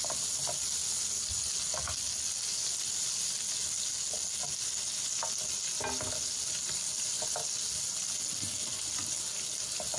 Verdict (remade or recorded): recorded